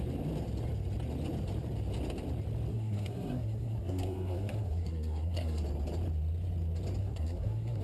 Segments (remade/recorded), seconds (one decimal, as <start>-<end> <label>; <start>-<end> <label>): 0.0-2.7 recorded; 2.7-5.6 remade; 5.6-7.0 recorded; 7.0-7.8 remade